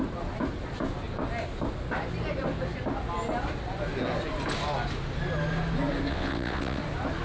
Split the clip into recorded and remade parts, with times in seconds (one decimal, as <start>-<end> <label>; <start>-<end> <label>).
0.0-6.1 recorded; 6.1-6.8 remade; 6.8-7.2 recorded